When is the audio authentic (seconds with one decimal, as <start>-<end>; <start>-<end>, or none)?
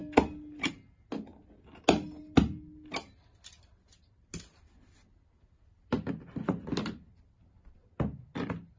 0.0-8.8